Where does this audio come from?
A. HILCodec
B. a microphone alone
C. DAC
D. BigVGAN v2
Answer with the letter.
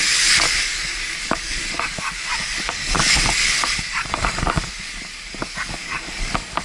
C